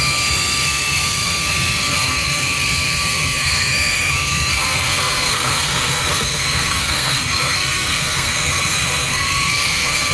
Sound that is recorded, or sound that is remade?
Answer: remade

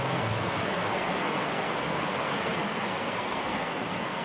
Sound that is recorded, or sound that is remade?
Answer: remade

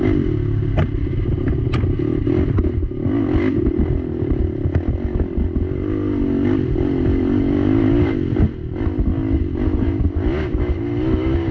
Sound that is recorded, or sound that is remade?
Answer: recorded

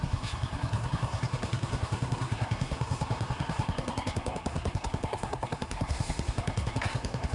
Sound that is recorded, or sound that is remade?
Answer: remade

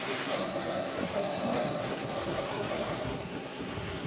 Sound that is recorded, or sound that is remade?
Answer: remade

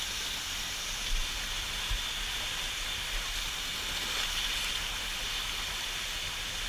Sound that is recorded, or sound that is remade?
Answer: recorded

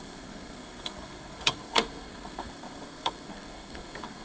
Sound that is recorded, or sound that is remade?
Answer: remade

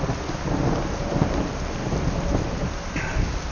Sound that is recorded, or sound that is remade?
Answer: recorded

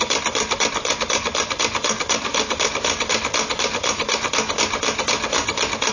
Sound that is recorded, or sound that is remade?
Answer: recorded